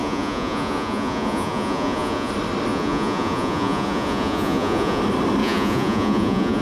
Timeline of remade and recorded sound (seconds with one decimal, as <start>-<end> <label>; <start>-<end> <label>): 0.0-2.3 remade; 2.3-2.7 recorded; 2.7-5.0 remade; 5.0-5.4 recorded; 5.4-6.6 remade